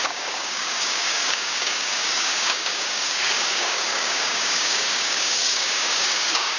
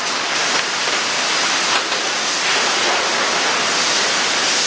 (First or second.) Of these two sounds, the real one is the second